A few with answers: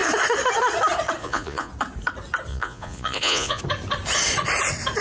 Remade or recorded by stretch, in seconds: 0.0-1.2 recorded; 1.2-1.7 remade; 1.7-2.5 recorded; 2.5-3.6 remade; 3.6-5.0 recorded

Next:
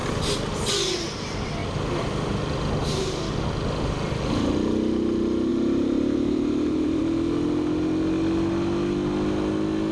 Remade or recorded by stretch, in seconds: 0.0-5.5 recorded; 5.5-7.0 remade; 7.0-9.9 recorded

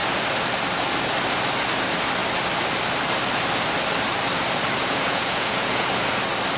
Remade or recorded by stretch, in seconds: 0.0-4.8 recorded; 4.8-5.9 remade; 5.9-6.6 recorded

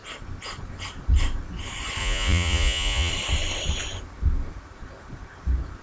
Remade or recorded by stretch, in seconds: 0.0-2.0 recorded; 2.0-3.1 remade; 3.1-5.8 recorded